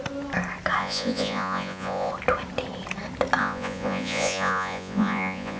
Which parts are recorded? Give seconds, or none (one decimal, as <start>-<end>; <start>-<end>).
0.0-0.8; 2.1-3.4